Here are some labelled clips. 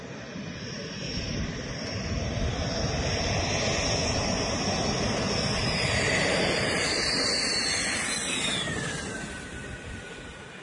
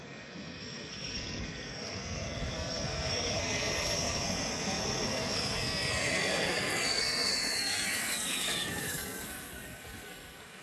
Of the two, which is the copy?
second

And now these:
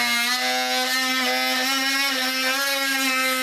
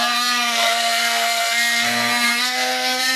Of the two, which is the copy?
second